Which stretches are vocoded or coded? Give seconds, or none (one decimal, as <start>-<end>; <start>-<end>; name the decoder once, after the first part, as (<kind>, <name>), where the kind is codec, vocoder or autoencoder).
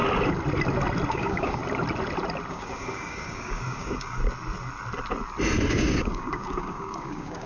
1.1-1.6 (codec, DAC); 2.5-4.2; 5.7-7.5